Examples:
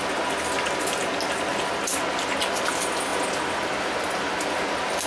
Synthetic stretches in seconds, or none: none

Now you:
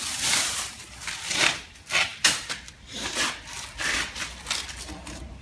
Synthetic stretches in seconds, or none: none

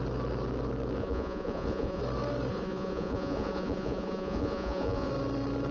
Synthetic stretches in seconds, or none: 1.0-2.0 (vocoder, Vocos); 2.5-5.1

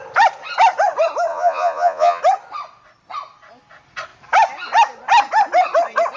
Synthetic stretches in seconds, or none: 1.3-2.2 (vocoder, Vocos)